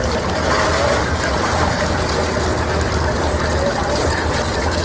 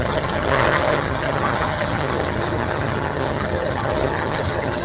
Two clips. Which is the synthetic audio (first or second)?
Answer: second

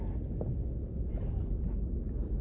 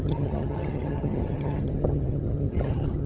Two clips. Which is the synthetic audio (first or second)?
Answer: second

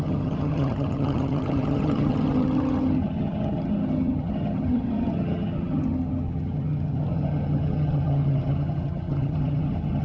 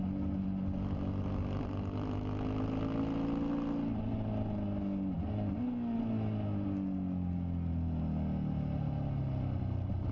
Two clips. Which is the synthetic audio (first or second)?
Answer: first